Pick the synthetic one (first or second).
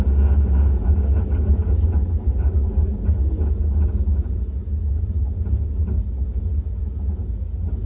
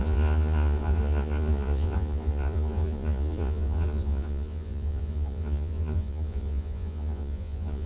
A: second